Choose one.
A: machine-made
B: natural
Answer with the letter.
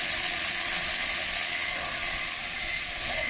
A